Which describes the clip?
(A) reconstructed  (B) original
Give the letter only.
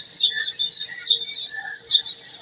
B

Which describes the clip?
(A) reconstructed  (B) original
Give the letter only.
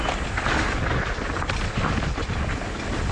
B